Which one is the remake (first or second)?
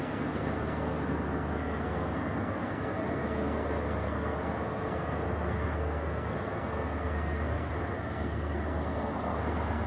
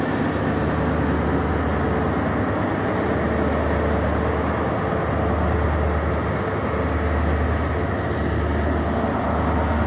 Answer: first